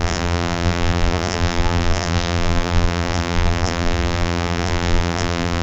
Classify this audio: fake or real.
fake